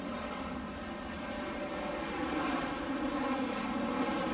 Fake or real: real